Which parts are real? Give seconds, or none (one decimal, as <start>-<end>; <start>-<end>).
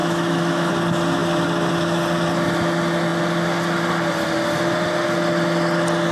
0.7-6.1